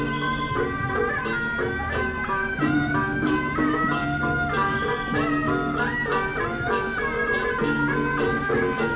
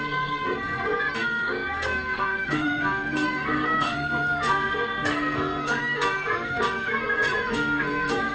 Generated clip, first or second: second